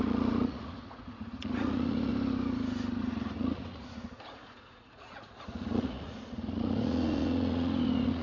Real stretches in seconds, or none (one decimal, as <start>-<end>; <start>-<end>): 2.1-3.0